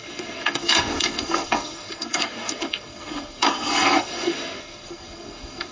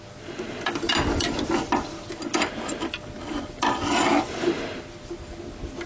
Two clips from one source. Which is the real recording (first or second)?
second